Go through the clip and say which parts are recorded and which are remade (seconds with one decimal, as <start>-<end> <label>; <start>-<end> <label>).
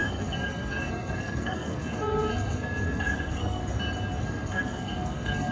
0.0-3.6 remade; 3.6-4.2 recorded; 4.2-5.5 remade